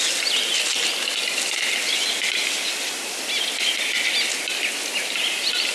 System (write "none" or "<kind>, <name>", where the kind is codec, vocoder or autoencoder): none